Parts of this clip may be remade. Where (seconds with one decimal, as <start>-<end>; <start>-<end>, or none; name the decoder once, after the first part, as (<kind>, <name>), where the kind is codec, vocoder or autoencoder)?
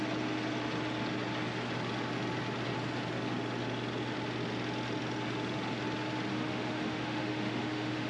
6.3-8.1 (autoencoder, DAC-VAE)